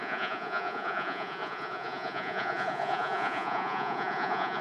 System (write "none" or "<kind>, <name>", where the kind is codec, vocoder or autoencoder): vocoder, Vocos